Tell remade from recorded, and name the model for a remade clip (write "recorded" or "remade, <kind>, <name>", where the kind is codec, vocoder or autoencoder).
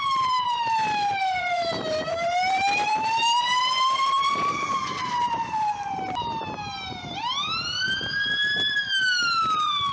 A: remade, vocoder, BigVGAN v2